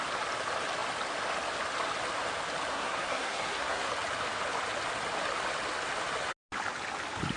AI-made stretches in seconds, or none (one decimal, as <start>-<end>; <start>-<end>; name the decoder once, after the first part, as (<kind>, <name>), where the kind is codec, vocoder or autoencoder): 2.7-3.9 (codec, SNAC)